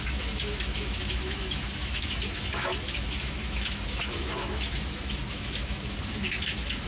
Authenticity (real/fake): fake